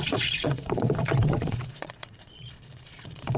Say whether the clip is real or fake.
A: fake